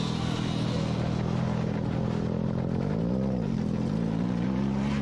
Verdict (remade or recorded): recorded